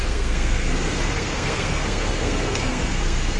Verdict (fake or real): fake